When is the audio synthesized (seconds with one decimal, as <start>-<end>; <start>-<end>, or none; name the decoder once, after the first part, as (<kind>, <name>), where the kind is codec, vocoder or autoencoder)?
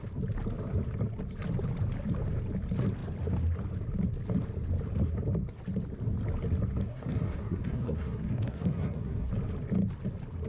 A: 6.9-9.3 (codec, SNAC)